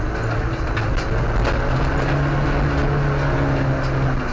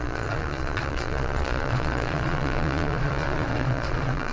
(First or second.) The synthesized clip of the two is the second